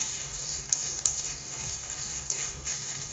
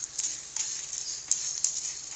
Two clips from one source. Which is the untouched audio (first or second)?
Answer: second